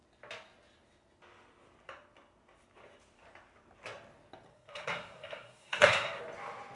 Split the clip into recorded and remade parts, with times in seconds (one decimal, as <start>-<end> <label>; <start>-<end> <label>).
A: 0.0-4.5 recorded; 4.5-6.2 remade; 6.2-6.8 recorded